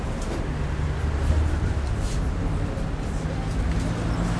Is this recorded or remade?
recorded